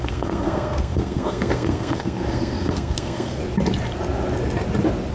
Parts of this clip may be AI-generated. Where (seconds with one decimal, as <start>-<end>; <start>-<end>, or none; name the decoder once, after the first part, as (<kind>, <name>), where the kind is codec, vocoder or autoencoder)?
0.0-3.4 (codec, SNAC)